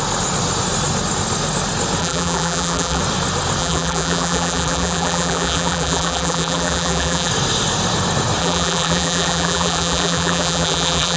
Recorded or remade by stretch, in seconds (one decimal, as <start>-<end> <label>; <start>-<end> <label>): 0.0-2.0 recorded; 2.0-3.0 remade; 3.0-3.6 recorded; 3.6-7.3 remade; 7.3-8.4 recorded; 8.4-11.2 remade